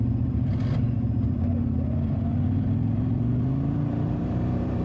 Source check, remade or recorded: remade